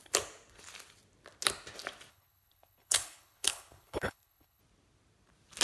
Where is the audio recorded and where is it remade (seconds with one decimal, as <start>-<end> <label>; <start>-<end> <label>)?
0.0-2.1 recorded; 2.1-4.6 remade; 4.6-5.6 recorded